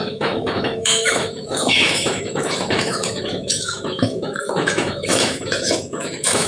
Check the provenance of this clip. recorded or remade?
remade